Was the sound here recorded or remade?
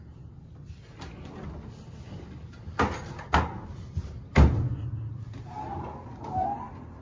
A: recorded